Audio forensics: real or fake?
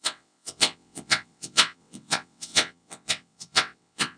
fake